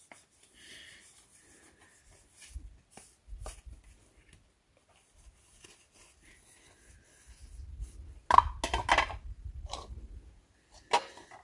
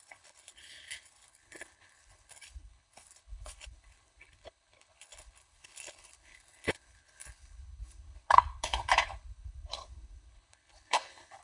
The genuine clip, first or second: first